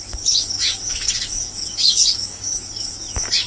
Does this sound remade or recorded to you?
remade